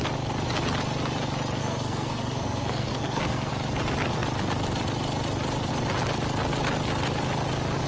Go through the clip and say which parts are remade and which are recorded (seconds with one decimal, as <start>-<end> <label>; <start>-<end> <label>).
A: 0.0-1.6 recorded; 1.6-3.5 remade; 3.5-7.9 recorded

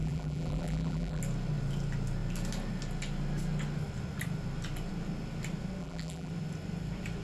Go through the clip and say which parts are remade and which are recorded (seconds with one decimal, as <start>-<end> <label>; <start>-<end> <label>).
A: 0.0-1.2 remade; 1.2-5.8 recorded; 5.8-6.3 remade; 6.3-7.2 recorded

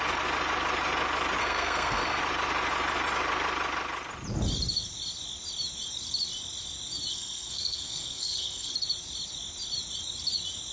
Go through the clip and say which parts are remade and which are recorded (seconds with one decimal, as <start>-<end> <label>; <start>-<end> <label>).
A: 0.0-1.4 recorded; 1.4-2.2 remade; 2.2-7.1 recorded; 7.1-8.7 remade; 8.7-10.7 recorded

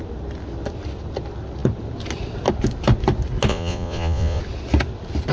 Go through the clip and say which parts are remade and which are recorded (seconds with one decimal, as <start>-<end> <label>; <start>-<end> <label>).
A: 0.0-3.5 recorded; 3.5-4.4 remade; 4.4-5.3 recorded

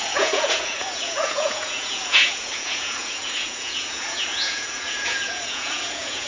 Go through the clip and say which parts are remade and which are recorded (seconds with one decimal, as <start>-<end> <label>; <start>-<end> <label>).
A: 0.0-6.3 remade